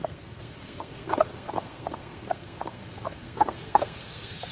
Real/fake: fake